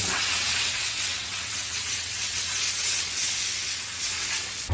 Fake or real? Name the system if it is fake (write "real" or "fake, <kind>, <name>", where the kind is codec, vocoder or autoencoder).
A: fake, vocoder, WaveNeXt